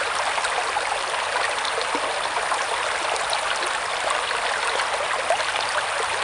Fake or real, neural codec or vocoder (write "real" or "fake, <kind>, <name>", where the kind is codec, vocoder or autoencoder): real